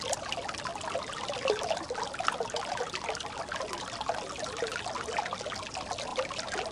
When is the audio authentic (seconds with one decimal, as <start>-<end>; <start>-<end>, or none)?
0.0-6.7